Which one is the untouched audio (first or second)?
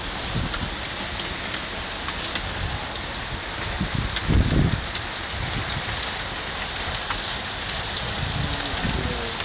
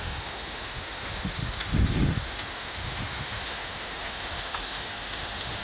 first